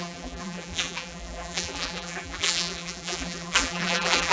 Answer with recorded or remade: remade